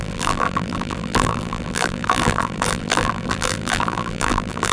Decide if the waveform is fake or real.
fake